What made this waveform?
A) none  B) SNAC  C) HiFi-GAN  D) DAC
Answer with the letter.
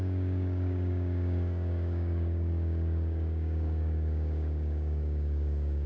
D